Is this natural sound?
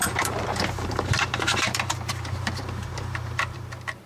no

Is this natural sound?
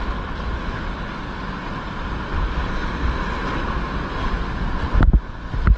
yes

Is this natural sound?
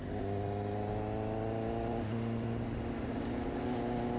yes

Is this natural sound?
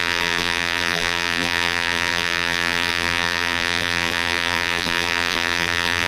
no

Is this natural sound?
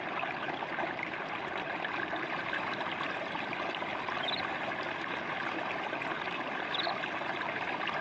yes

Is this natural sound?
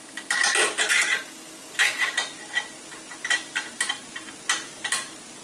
yes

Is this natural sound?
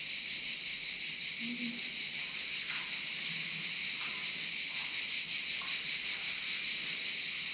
yes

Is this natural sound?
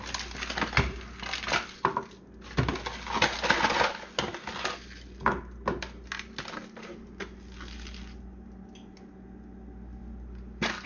yes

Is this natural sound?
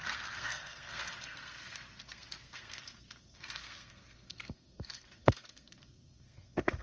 no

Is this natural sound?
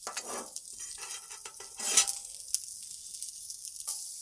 yes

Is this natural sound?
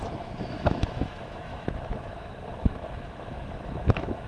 no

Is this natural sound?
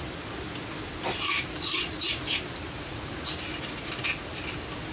yes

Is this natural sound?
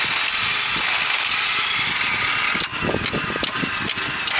yes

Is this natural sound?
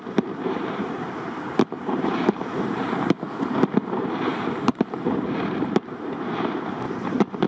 no